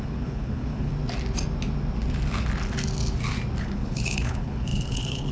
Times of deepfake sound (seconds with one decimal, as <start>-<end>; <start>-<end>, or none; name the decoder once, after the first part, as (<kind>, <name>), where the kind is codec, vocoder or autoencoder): 0.0-0.9 (codec, HILCodec); 3.6-5.3